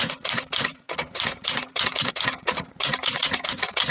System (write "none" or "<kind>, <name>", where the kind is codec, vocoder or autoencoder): vocoder, Vocos